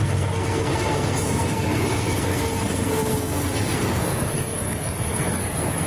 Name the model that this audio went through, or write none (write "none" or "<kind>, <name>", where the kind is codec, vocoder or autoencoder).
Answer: codec, SNAC